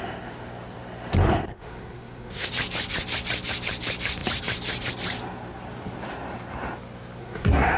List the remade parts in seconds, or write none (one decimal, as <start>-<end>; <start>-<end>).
1.5-2.5; 7.2-7.8